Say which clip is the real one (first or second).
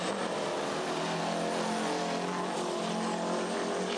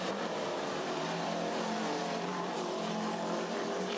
first